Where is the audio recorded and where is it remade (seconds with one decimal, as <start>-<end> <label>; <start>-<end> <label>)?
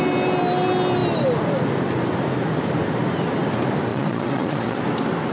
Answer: 0.0-3.9 recorded; 3.9-4.8 remade; 4.8-5.3 recorded